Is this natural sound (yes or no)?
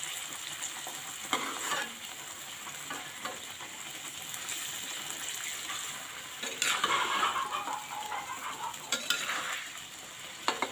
yes